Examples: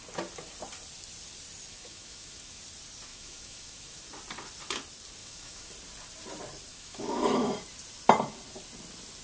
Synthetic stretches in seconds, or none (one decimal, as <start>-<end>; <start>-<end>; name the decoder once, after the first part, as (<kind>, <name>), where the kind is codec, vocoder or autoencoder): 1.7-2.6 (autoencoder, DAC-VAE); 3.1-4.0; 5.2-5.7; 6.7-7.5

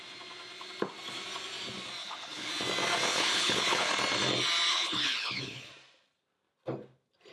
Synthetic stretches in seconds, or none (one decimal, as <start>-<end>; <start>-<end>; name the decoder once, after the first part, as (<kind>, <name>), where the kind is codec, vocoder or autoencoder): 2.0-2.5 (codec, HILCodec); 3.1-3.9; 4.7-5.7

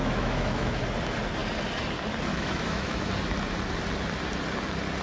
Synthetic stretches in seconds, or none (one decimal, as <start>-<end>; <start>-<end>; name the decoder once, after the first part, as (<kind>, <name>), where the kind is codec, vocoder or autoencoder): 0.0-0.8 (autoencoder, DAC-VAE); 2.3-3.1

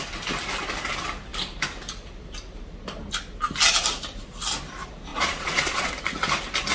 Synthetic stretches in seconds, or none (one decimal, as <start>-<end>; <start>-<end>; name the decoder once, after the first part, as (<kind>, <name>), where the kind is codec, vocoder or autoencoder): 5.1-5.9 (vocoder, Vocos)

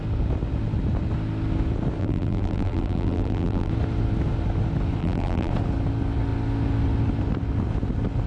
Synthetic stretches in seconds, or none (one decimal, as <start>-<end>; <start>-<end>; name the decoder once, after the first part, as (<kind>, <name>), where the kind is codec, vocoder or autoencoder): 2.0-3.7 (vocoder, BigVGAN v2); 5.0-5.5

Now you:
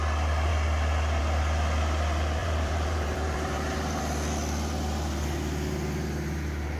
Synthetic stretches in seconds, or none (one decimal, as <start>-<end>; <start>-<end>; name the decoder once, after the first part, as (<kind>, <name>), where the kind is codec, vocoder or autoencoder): 2.4-4.0 (vocoder, BigVGAN v2)

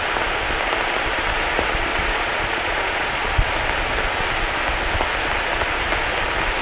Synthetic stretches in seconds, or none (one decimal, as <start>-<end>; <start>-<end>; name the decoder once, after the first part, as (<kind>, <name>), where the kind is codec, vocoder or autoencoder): 1.9-3.5 (vocoder, Vocos)

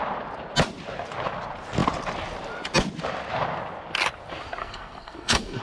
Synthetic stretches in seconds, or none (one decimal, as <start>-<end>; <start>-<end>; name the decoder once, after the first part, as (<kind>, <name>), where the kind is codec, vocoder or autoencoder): 4.6-5.6 (codec, SNAC)